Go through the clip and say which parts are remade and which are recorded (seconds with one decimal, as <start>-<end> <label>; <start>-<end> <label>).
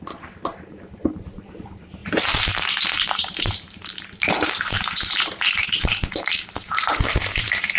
0.0-7.8 remade